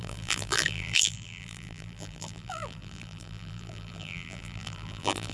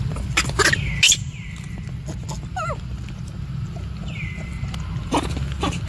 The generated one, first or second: first